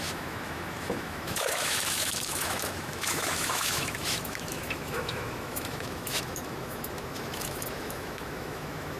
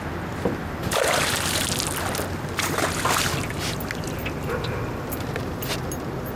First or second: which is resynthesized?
first